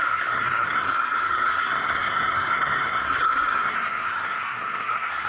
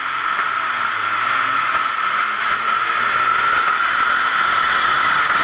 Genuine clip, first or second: second